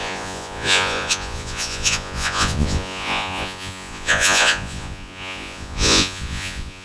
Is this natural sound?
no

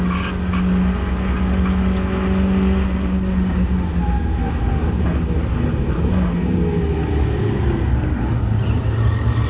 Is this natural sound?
yes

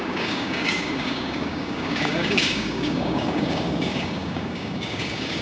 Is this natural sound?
no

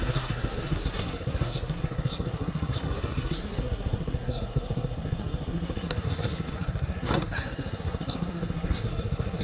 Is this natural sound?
no